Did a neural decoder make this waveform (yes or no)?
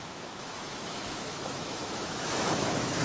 yes